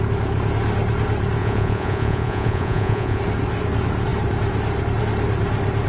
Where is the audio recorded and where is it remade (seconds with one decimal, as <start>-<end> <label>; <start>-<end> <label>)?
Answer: 0.0-1.4 recorded; 1.4-3.2 remade; 3.2-5.9 recorded

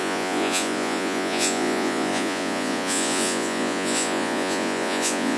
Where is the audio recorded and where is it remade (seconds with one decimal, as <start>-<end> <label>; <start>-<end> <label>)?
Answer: 0.0-5.4 remade

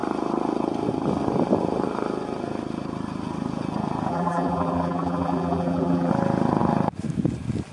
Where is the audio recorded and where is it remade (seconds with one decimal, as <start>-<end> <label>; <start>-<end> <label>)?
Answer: 0.0-4.1 recorded; 4.1-6.1 remade; 6.1-7.7 recorded